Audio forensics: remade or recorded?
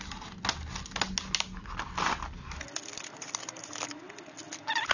recorded